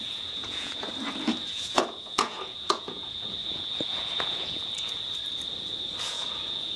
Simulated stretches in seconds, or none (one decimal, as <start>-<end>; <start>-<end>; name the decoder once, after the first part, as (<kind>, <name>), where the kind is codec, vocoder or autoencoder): 0.0-5.0 (vocoder, Vocos); 6.0-6.8